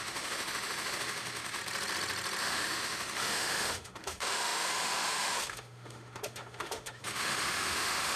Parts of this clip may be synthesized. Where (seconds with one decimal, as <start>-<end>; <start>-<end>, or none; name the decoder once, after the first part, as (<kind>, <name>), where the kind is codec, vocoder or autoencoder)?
0.0-1.6 (autoencoder, DAC-VAE); 2.4-8.2